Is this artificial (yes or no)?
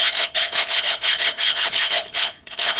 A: yes